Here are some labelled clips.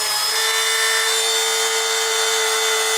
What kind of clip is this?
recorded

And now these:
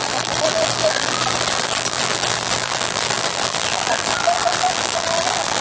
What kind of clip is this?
remade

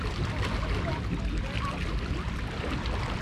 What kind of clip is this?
recorded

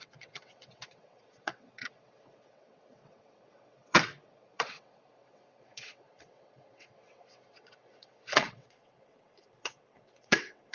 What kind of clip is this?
remade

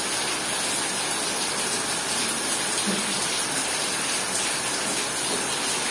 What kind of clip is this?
recorded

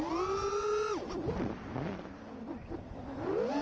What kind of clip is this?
recorded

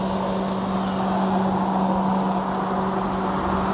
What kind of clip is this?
recorded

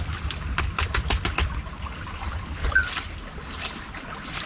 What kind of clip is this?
recorded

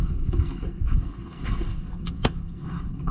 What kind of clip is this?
remade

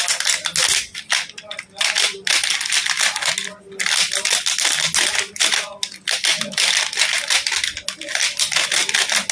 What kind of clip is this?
recorded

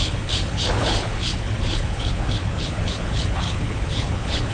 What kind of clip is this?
remade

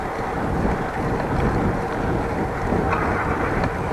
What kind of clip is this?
recorded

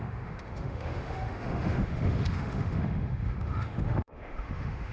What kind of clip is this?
remade